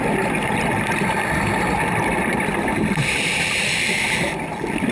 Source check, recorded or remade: recorded